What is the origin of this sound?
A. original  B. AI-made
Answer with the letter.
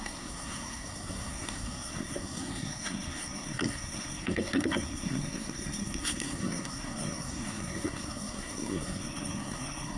B